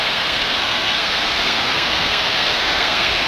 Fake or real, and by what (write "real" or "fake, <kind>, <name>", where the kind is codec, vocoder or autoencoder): fake, codec, SNAC